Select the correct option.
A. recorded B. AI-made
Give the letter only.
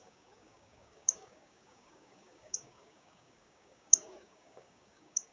B